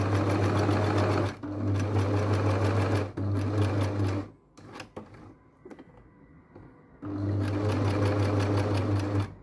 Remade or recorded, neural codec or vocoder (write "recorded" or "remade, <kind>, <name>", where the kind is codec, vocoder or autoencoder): recorded